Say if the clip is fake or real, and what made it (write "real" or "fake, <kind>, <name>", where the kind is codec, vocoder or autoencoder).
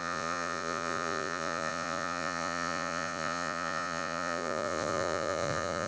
fake, vocoder, Vocos